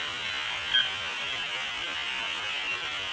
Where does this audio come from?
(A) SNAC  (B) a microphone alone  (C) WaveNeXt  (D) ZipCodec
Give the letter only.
B